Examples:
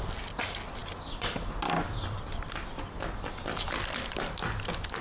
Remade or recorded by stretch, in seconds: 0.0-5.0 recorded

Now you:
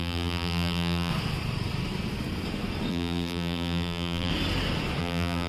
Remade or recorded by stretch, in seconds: 0.0-1.1 remade; 1.1-2.9 recorded; 2.9-4.3 remade; 4.3-5.0 recorded; 5.0-5.5 remade

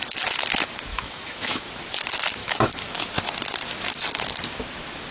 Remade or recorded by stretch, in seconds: 0.0-0.9 recorded; 0.9-1.7 remade; 1.7-2.4 recorded; 2.4-3.0 remade; 3.0-5.1 recorded

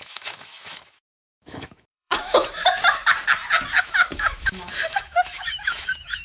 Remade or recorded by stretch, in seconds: 0.0-3.0 remade; 3.0-3.8 recorded; 3.8-6.2 remade

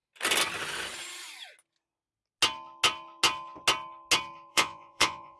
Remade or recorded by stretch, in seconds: 0.0-4.5 recorded; 4.5-5.4 remade

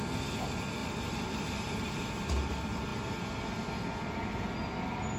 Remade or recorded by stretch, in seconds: 0.0-0.8 recorded; 0.8-2.0 remade; 2.0-5.2 recorded

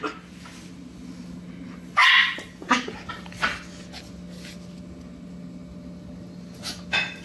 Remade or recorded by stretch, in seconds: 0.0-7.2 recorded